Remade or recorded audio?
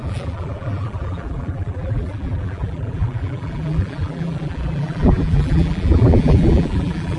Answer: remade